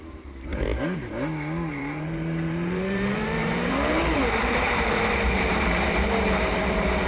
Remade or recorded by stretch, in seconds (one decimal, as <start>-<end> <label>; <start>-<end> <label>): 0.0-0.5 remade; 0.5-1.7 recorded; 1.7-7.1 remade